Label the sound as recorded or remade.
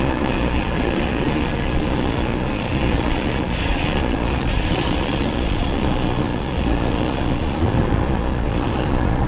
remade